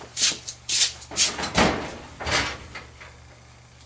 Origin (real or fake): real